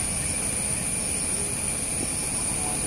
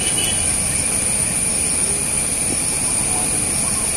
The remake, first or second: second